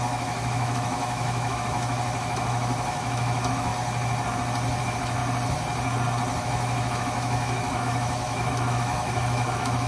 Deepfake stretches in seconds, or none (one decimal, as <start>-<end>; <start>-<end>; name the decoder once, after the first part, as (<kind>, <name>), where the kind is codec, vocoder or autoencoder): 0.0-3.7 (autoencoder, DAC-VAE); 4.8-5.2; 6.4-9.9